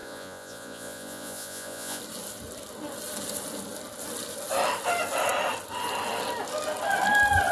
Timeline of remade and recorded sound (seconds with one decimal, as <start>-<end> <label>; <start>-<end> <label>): 0.0-2.0 remade; 2.0-7.5 recorded